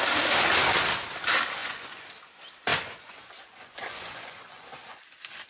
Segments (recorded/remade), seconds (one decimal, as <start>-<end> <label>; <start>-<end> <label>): 0.0-1.6 recorded; 1.6-2.1 remade; 2.1-2.7 recorded; 2.7-5.0 remade; 5.0-5.5 recorded